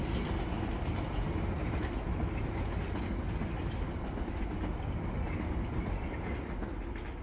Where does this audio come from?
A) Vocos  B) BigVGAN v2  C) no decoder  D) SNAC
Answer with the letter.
C